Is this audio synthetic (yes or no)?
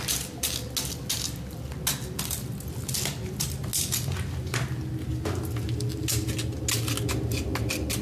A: no